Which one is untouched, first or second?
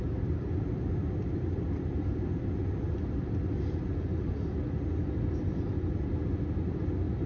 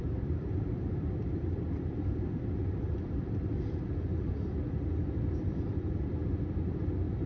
first